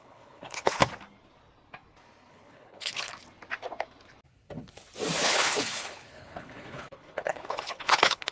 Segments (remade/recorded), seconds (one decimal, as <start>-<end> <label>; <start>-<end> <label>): 0.0-0.8 remade; 0.8-2.3 recorded; 2.3-3.1 remade; 3.1-5.2 recorded; 5.2-8.3 remade